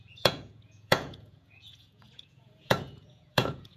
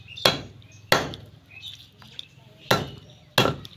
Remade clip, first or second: first